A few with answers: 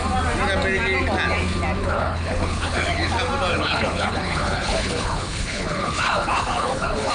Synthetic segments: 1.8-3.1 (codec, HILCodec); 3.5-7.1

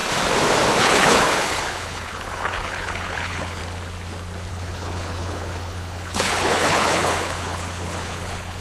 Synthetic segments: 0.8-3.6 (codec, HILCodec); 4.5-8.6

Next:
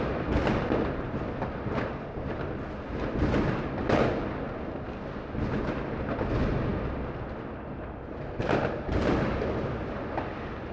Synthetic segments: none

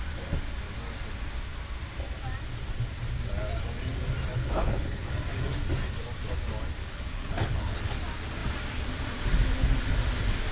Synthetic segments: 4.3-5.1 (codec, HILCodec); 6.8-8.0